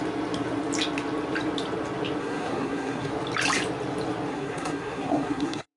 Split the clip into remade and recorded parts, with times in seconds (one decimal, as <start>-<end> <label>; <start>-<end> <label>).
0.0-2.2 recorded; 2.2-3.1 remade; 3.1-4.3 recorded; 4.3-5.8 remade